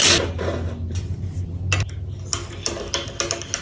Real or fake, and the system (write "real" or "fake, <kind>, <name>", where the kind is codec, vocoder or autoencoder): real